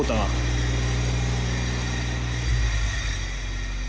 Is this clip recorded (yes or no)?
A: yes